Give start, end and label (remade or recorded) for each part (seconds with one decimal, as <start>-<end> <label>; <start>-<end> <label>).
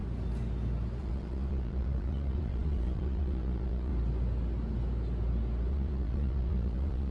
0.0-1.0 recorded; 1.0-3.9 remade; 3.9-5.7 recorded; 5.7-7.1 remade